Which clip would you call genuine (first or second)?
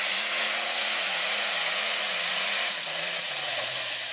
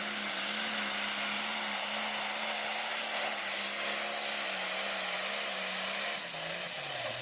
second